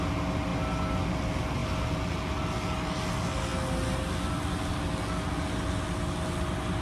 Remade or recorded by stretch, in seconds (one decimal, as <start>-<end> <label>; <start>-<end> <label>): 0.0-6.8 recorded